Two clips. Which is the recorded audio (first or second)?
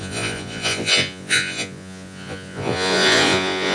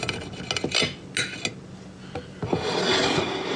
second